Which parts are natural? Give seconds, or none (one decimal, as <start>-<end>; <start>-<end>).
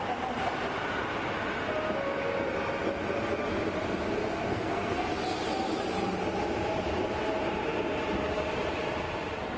0.0-4.5; 5.1-9.6